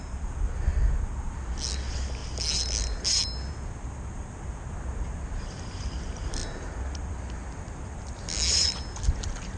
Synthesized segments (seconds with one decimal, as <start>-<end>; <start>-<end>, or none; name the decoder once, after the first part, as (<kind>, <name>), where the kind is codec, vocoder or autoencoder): none